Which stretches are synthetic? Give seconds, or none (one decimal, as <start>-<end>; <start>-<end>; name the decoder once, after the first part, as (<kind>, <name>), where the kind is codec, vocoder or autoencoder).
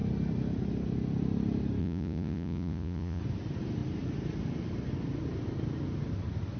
1.8-3.2 (vocoder, Vocos)